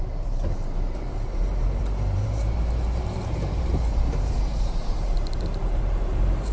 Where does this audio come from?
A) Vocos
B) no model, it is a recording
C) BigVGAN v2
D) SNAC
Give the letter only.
C